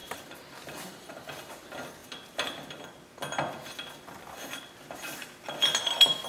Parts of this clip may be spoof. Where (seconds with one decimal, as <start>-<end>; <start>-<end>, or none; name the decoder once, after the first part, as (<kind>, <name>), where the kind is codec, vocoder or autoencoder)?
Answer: 0.0-1.5 (vocoder, BigVGAN v2)